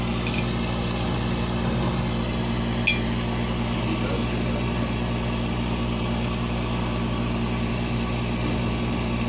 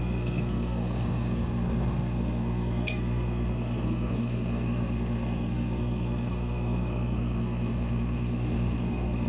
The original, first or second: first